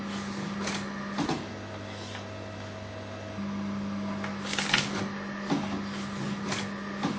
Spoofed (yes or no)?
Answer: no